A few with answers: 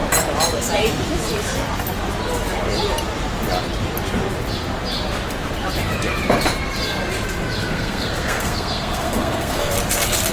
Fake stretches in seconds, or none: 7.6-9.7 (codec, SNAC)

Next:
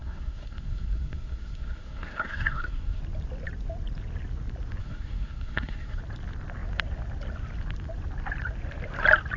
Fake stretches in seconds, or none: 0.0-3.0 (codec, SNAC); 4.8-6.0

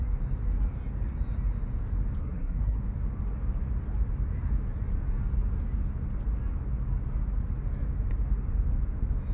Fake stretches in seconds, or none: 2.2-2.8 (codec, SNAC)

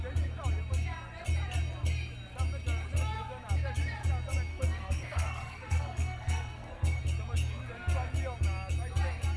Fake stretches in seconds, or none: 4.5-7.0 (codec, SNAC)